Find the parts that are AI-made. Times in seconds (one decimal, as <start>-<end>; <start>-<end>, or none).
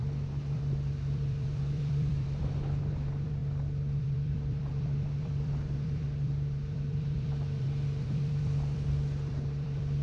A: 0.0-3.4; 4.0-10.0